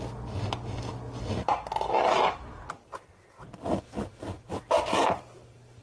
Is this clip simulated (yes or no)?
no